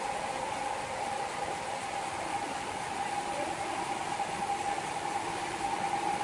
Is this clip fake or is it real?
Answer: real